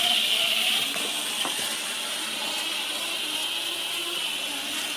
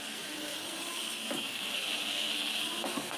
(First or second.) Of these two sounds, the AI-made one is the second